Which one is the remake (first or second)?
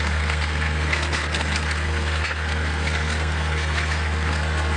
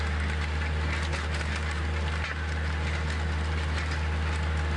first